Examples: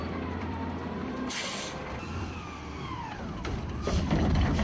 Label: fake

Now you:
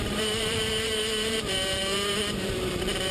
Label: fake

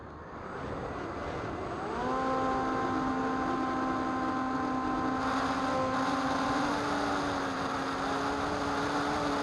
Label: real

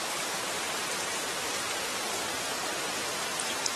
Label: fake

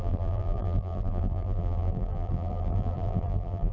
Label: fake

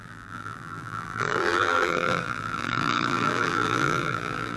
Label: fake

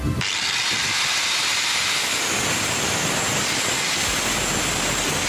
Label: real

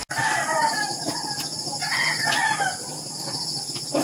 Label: real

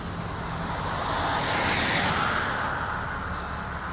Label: real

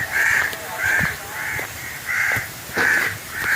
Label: fake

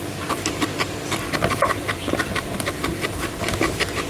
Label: fake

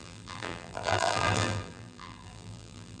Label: fake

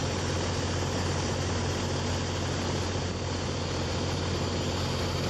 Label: real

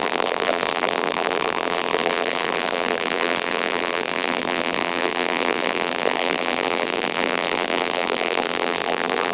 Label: fake